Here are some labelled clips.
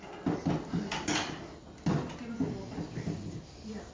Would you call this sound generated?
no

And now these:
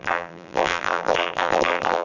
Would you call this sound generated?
yes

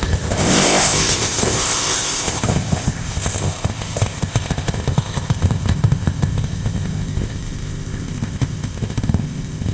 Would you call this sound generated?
yes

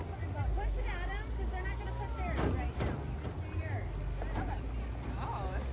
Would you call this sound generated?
no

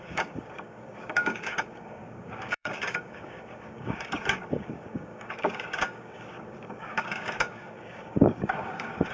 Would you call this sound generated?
yes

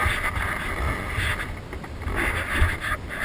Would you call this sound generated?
no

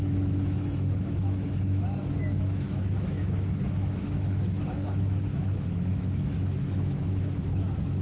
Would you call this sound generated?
yes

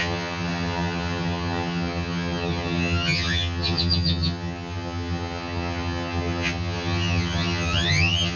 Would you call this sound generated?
yes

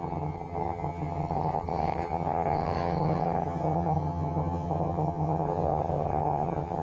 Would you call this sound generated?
yes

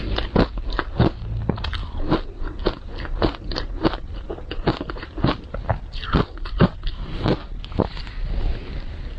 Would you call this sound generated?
no